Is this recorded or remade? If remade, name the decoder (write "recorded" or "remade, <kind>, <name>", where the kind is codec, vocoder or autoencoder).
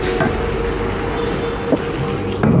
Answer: recorded